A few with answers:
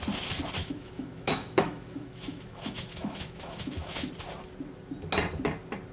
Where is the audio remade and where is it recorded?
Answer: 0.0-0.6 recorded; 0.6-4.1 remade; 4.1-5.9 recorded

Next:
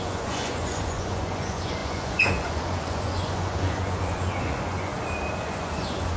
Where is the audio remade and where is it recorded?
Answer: 0.0-4.9 remade; 4.9-5.4 recorded; 5.4-6.2 remade

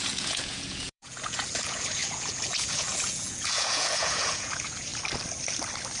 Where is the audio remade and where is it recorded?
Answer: 0.0-4.9 remade; 4.9-6.0 recorded

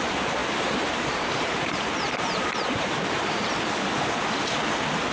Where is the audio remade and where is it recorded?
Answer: 0.0-0.4 recorded; 0.4-3.5 remade; 3.5-5.1 recorded

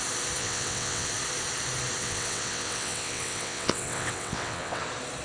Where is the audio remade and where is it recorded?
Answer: 0.0-0.4 recorded; 0.4-1.1 remade; 1.1-2.0 recorded; 2.0-4.8 remade; 4.8-5.2 recorded

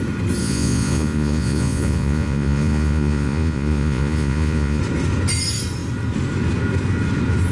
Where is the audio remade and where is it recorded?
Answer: 0.0-0.4 recorded; 0.4-4.8 remade; 4.8-7.5 recorded

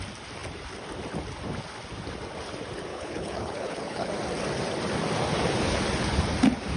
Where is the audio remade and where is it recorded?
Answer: 0.0-2.9 recorded; 2.9-4.1 remade; 4.1-6.8 recorded

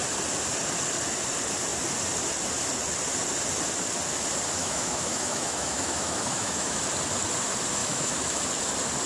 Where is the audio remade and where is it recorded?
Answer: 0.0-4.6 recorded; 4.6-6.8 remade; 6.8-7.8 recorded; 7.8-8.4 remade; 8.4-9.1 recorded